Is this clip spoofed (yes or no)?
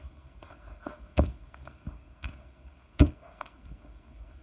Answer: yes